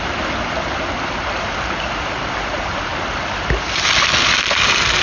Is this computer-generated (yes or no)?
no